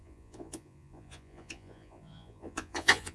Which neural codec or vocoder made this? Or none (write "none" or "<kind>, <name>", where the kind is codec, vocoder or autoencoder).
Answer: vocoder, Vocos